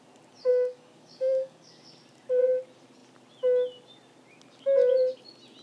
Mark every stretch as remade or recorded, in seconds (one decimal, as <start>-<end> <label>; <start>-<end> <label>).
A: 0.0-0.5 recorded; 0.5-1.8 remade; 1.8-5.6 recorded